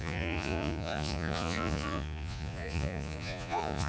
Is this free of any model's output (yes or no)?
no